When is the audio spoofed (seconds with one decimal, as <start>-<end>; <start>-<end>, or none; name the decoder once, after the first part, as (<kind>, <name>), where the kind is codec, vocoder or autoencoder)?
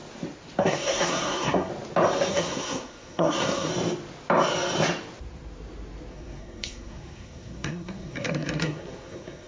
0.6-1.7 (codec, SNAC); 2.3-3.7; 6.1-9.5